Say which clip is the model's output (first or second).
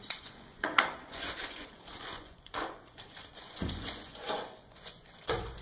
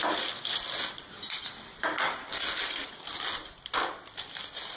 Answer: first